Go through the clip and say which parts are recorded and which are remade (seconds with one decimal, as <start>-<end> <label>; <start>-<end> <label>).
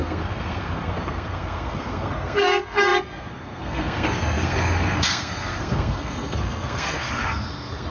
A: 0.0-7.9 remade